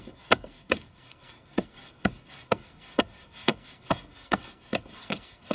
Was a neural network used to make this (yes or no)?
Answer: yes